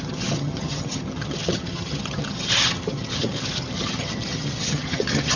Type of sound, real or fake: fake